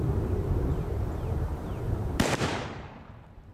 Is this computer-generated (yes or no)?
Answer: yes